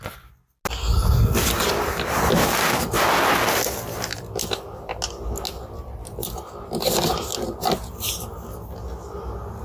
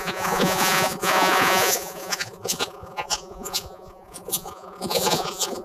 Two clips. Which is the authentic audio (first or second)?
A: first